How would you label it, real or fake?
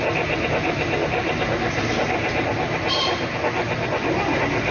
real